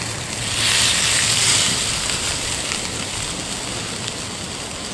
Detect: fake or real real